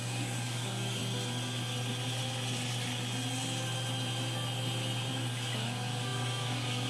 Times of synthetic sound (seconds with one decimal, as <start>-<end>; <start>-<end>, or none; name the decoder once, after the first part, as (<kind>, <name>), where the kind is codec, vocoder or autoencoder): 0.0-1.0 (codec, DAC); 5.1-6.9